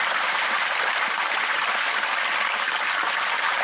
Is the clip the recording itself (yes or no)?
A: yes